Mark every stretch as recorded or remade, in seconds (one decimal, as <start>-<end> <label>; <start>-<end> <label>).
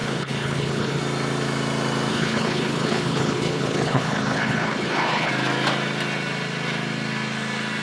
0.0-1.0 remade; 1.0-2.1 recorded; 2.1-5.3 remade; 5.3-7.8 recorded